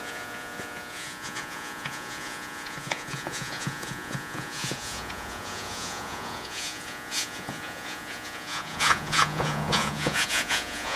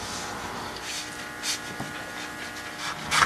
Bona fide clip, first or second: second